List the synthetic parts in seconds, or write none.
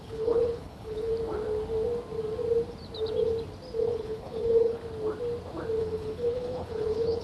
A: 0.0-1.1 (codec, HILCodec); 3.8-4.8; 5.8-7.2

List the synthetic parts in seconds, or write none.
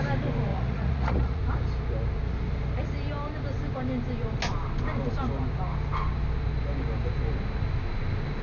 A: 0.5-1.4 (vocoder, Vocos)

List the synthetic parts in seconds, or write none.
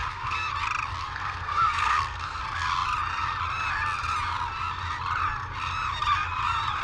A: 0.0-0.5 (codec, SNAC); 1.0-2.4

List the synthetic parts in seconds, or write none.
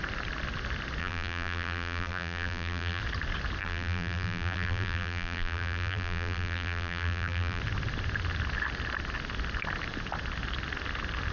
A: 1.0-3.0 (vocoder, BigVGAN v2); 3.6-7.6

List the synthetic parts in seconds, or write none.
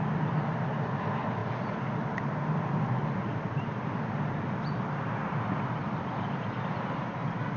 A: none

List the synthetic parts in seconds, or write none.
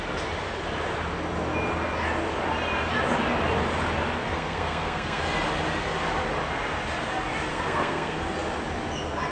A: 4.3-5.2 (codec, SNAC); 7.5-8.2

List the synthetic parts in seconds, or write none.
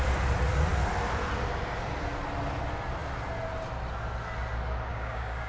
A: 4.9-5.5 (codec, DAC)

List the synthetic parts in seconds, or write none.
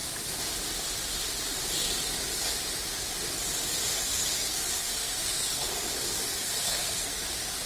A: 3.9-7.2 (codec, SNAC)